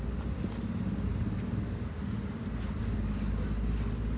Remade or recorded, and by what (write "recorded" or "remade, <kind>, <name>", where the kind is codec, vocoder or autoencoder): recorded